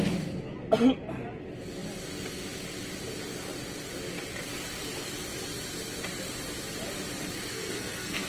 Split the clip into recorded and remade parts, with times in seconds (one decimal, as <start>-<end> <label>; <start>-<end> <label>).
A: 0.0-7.5 recorded; 7.5-8.3 remade